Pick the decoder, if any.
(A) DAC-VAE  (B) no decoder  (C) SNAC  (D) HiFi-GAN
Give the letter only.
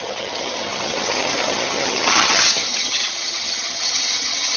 D